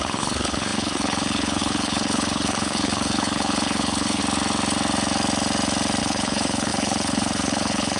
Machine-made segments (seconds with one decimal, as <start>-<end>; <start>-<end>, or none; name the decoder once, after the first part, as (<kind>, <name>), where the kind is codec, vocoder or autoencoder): 0.0-4.2 (codec, HILCodec); 6.0-8.0